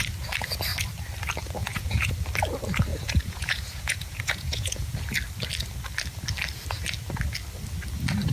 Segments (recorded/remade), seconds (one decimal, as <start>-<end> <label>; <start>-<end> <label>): 0.0-1.6 recorded; 1.6-2.1 remade; 2.1-2.9 recorded; 2.9-4.9 remade; 4.9-8.3 recorded